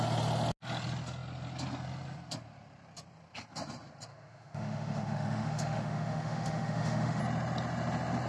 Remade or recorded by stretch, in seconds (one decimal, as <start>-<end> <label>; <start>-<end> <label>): 0.0-4.1 recorded; 4.1-7.2 remade; 7.2-8.3 recorded